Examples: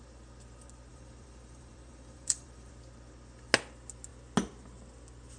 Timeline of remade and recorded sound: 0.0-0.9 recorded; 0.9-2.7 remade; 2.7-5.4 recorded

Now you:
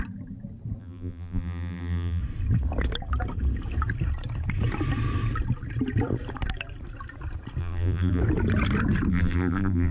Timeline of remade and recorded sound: 0.0-0.8 recorded; 0.8-2.2 remade; 2.2-7.6 recorded; 7.6-8.2 remade; 8.2-9.1 recorded; 9.1-9.9 remade

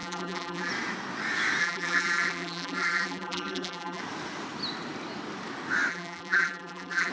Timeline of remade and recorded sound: 0.0-0.7 remade; 0.7-1.6 recorded; 1.6-4.0 remade; 4.0-5.9 recorded; 5.9-7.1 remade

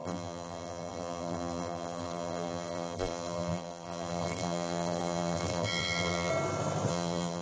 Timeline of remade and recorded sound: 0.0-6.3 remade; 6.3-6.9 recorded; 6.9-7.4 remade

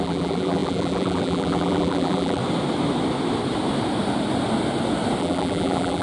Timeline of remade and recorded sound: 0.0-2.4 remade; 2.4-5.2 recorded; 5.2-6.0 remade